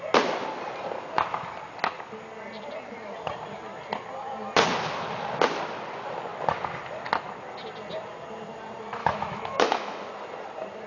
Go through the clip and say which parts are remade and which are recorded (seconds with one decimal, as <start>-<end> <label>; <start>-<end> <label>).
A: 0.0-9.0 recorded; 9.0-10.1 remade; 10.1-10.9 recorded

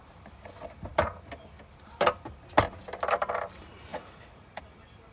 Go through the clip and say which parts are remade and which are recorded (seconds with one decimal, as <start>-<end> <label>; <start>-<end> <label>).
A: 0.0-3.9 recorded; 3.9-4.6 remade; 4.6-5.1 recorded

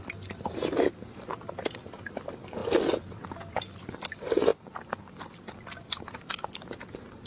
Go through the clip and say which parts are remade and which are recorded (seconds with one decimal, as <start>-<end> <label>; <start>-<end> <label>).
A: 0.0-7.3 recorded

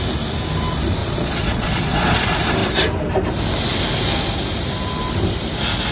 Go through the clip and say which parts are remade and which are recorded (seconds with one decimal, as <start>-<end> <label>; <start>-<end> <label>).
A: 0.0-1.0 recorded; 1.0-2.2 remade; 2.2-5.9 recorded

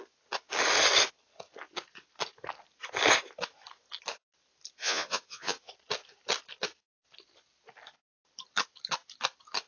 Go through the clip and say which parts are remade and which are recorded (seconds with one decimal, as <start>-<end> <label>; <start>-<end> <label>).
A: 0.0-4.8 recorded; 4.8-5.7 remade; 5.7-9.7 recorded